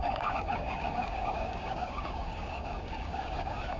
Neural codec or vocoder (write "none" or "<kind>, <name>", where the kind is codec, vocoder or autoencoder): codec, DAC